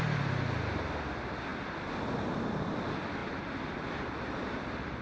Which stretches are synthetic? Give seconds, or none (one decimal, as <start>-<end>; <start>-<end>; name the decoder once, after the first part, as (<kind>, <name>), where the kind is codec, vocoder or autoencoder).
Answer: none